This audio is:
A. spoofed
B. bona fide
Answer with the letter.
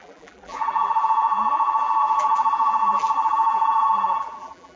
A